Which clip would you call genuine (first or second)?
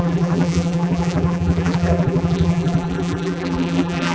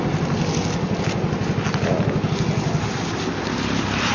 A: second